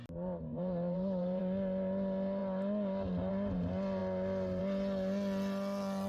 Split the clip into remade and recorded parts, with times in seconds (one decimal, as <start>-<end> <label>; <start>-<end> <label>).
0.0-0.5 recorded; 0.5-1.4 remade; 1.4-6.1 recorded